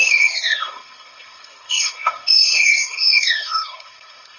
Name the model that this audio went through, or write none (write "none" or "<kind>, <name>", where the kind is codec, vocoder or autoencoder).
codec, SNAC